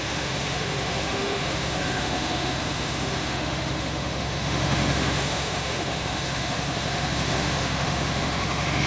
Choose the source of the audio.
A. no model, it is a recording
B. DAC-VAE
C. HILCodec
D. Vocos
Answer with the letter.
B